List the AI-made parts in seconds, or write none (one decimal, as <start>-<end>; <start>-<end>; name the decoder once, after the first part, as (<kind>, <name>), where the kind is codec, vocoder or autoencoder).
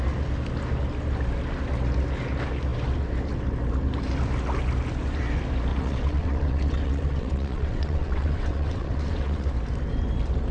5.7-9.5 (vocoder, WaveNeXt)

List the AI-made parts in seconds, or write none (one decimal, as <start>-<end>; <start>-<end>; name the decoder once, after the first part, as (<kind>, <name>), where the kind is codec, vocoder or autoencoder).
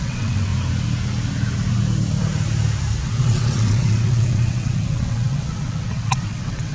0.0-0.5 (vocoder, WaveNeXt); 3.0-6.7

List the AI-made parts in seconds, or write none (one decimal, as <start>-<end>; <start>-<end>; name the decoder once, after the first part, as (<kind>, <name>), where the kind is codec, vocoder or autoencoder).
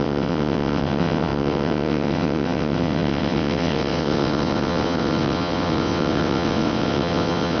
0.0-7.6 (vocoder, WaveNeXt)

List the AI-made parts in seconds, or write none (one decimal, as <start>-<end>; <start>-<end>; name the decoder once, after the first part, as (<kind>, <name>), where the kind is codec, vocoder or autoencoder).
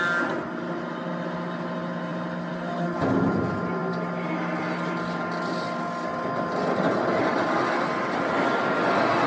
none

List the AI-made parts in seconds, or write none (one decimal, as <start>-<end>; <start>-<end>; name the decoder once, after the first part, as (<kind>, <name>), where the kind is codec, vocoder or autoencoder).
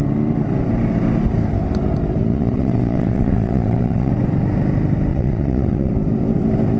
2.3-4.1 (vocoder, WaveNeXt); 5.1-5.9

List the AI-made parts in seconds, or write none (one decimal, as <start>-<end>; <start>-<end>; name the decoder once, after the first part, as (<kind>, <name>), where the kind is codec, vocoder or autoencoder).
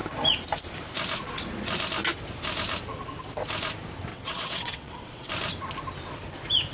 4.1-5.3 (vocoder, WaveNeXt)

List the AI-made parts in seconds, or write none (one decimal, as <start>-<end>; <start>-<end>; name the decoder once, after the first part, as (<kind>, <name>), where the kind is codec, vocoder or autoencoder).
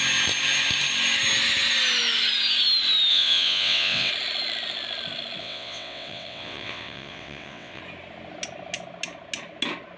3.1-4.1 (vocoder, WaveNeXt); 5.4-7.8